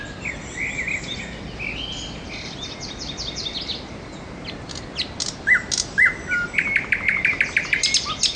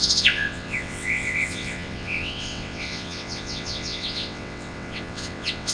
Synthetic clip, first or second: second